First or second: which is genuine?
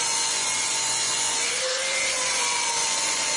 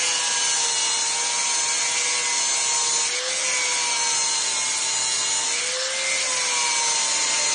second